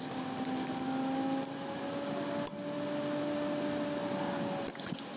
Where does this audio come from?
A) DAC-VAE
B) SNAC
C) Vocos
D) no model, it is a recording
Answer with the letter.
D